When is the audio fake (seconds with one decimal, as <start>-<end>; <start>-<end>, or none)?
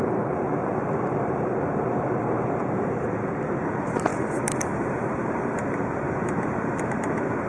0.0-7.5